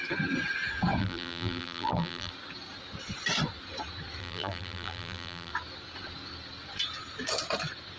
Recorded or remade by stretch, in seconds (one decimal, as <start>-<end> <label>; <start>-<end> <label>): 0.0-1.0 recorded; 1.0-2.3 remade; 2.3-4.2 recorded; 4.2-5.5 remade; 5.5-8.0 recorded